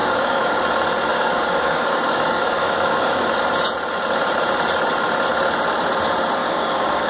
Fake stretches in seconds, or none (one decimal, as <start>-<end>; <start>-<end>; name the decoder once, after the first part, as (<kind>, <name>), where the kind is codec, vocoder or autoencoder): 0.0-0.6 (codec, DAC); 1.1-3.3; 6.4-7.1